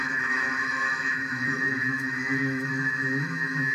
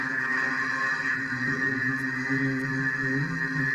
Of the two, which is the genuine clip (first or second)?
second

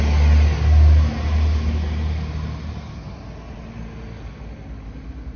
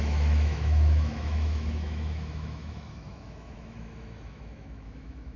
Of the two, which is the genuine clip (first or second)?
first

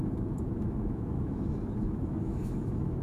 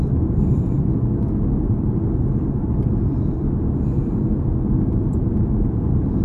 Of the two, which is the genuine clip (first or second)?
second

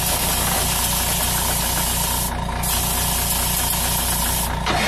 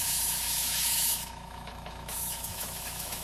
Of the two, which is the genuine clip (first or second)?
first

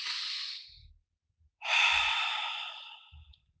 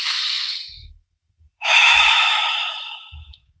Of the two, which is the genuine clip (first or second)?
first